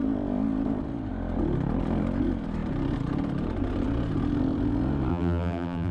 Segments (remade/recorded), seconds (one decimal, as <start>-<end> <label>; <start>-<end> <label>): 0.0-5.1 recorded; 5.1-5.9 remade